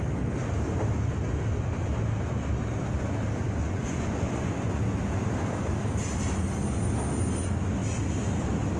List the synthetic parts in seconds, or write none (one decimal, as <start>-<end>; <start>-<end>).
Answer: 3.6-4.8